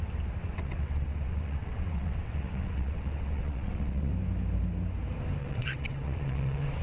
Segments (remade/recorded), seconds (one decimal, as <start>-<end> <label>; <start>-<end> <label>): 0.0-0.4 recorded; 0.4-4.1 remade; 4.1-5.4 recorded; 5.4-6.8 remade